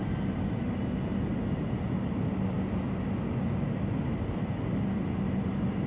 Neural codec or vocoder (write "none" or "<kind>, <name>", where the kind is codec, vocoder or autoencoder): none